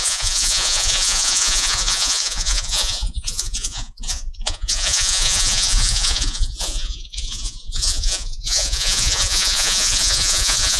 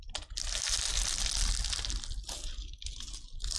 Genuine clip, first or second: second